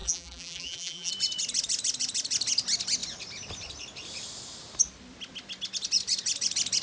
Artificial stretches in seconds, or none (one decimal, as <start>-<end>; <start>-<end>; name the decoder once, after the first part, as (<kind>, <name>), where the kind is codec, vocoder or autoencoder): 0.0-1.1 (vocoder, BigVGAN v2)